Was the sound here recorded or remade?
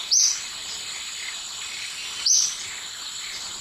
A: recorded